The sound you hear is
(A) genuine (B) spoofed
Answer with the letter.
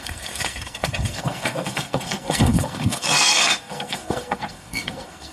B